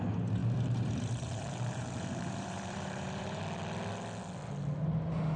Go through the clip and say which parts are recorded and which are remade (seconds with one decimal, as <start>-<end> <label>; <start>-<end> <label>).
0.0-0.4 recorded; 0.4-3.4 remade; 3.4-5.4 recorded